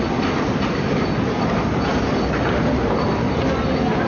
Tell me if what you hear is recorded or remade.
recorded